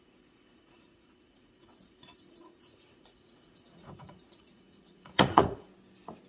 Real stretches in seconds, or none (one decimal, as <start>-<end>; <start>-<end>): 5.7-6.3